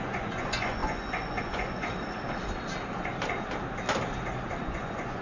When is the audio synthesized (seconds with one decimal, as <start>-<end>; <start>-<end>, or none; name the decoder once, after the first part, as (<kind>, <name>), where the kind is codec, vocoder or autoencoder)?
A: 0.0-1.9 (vocoder, Vocos); 4.6-5.2